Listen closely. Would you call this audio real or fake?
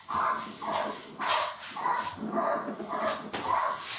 real